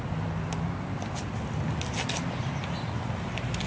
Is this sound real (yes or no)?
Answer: yes